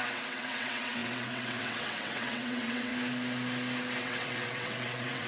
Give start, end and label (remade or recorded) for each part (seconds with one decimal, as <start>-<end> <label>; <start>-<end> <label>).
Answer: 0.0-2.9 remade; 2.9-4.0 recorded; 4.0-5.3 remade